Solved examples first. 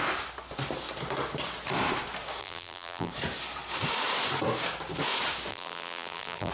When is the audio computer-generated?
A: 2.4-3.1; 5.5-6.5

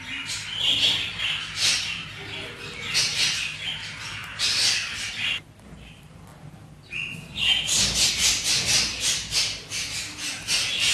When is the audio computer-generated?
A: none

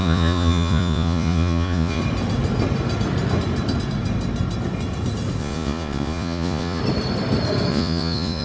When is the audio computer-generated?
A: 0.0-2.0; 5.4-6.8; 7.7-8.4

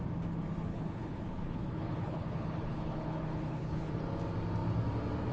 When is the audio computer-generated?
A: 0.7-3.9